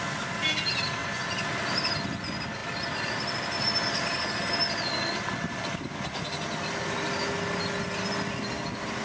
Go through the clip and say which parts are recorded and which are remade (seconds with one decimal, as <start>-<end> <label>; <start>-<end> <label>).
0.0-9.0 recorded